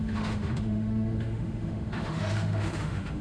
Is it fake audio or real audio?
fake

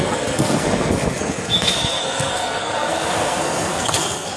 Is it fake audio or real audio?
fake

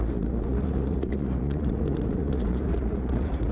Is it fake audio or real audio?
fake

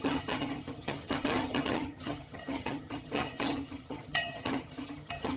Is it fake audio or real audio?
fake